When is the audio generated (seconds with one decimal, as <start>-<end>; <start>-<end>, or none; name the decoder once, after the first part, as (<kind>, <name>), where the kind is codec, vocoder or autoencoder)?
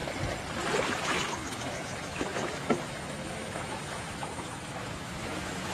0.8-5.7 (autoencoder, DAC-VAE)